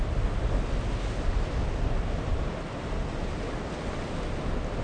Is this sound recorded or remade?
recorded